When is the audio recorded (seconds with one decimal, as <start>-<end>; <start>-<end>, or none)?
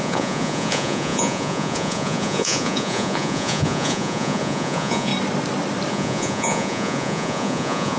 5.1-5.9